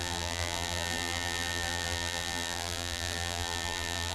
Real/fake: fake